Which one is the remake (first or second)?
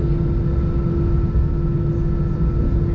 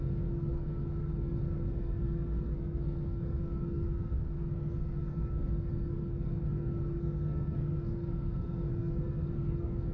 second